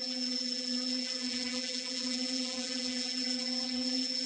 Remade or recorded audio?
remade